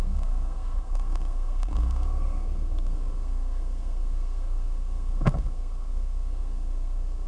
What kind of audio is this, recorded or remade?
remade